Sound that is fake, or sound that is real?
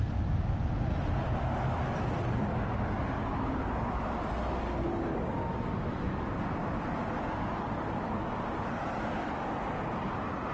real